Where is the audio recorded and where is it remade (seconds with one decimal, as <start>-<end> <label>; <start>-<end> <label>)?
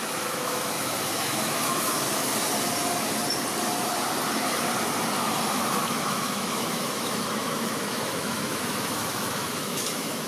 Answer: 0.0-2.3 remade; 2.3-5.5 recorded; 5.5-10.3 remade